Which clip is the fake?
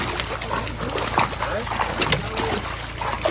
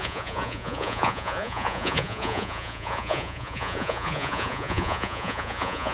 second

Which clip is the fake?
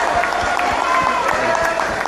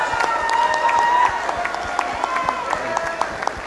first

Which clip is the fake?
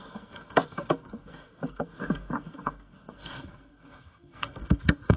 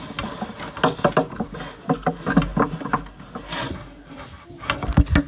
first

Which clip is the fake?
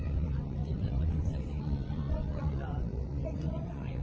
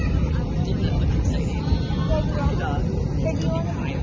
first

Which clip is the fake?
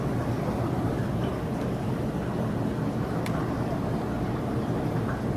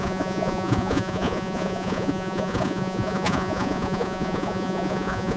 second